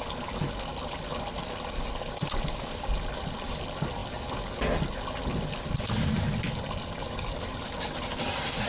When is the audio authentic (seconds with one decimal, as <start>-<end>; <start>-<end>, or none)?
0.0-8.7